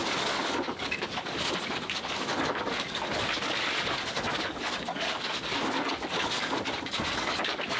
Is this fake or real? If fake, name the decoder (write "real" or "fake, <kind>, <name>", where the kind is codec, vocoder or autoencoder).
fake, codec, DAC